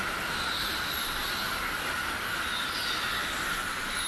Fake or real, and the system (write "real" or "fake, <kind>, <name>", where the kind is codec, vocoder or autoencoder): real